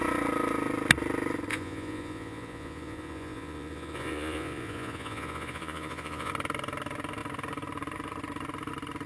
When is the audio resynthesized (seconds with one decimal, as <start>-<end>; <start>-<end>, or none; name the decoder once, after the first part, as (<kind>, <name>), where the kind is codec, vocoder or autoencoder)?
1.5-6.3 (vocoder, Vocos)